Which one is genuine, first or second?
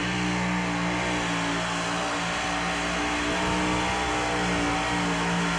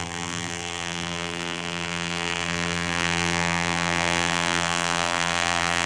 first